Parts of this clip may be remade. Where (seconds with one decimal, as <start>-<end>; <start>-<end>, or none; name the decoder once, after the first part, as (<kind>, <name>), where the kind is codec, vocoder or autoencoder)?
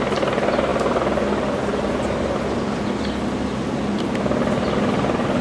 none